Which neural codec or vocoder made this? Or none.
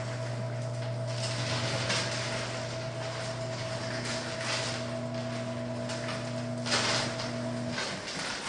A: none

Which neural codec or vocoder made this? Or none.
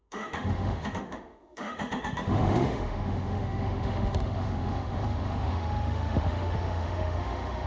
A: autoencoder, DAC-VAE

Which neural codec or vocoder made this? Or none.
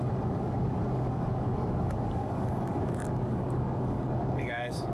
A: codec, DAC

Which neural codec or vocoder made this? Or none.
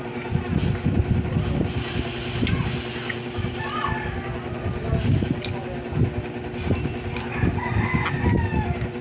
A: vocoder, BigVGAN v2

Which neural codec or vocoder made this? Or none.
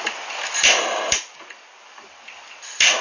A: none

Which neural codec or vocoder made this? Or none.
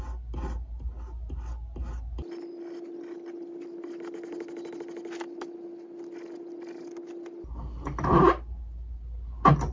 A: none